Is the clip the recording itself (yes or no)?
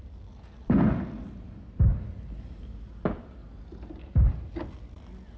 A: yes